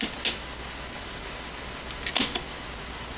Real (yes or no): yes